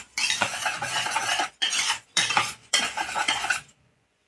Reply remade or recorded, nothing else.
remade